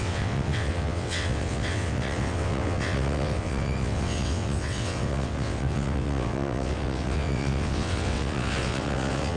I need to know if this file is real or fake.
fake